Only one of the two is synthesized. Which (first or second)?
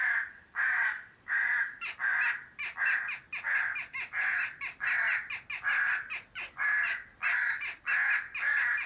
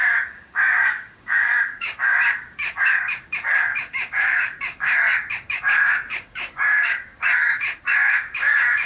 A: second